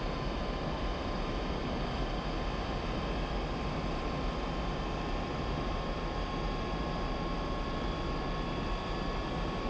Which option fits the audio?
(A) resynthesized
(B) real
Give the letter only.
B